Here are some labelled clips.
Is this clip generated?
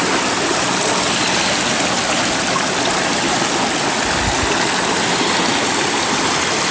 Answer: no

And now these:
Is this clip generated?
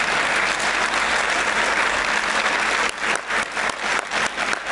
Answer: no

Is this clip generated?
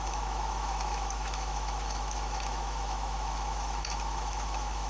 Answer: yes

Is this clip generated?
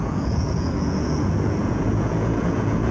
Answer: yes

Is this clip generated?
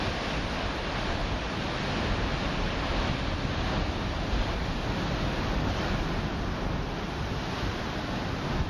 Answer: no